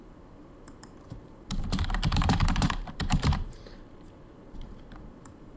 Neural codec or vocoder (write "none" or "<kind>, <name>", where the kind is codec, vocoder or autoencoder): vocoder, BigVGAN v2